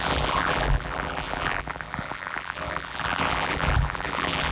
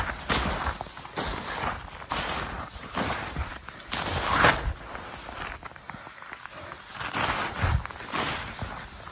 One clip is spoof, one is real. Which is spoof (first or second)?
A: first